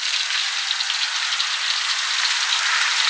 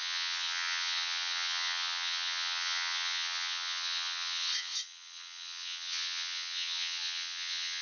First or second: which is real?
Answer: first